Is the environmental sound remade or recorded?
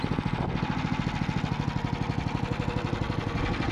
recorded